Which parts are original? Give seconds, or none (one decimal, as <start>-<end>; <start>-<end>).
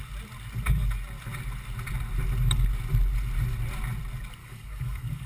0.0-4.4